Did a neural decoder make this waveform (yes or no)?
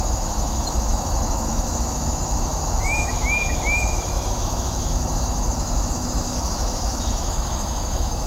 yes